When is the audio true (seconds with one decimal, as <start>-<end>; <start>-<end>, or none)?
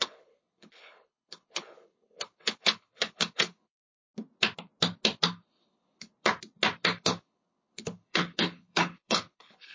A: 4.0-5.5; 6.1-7.0